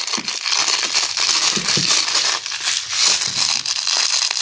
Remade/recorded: recorded